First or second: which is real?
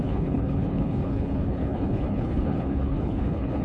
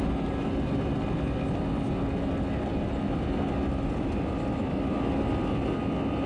second